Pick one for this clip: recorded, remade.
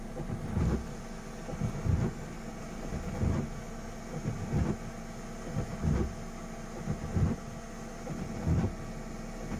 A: recorded